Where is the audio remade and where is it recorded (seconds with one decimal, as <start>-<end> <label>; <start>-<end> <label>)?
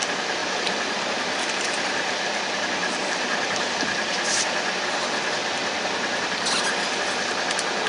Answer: 0.0-0.4 recorded; 0.4-2.2 remade; 2.2-2.8 recorded; 2.8-3.8 remade; 3.8-7.9 recorded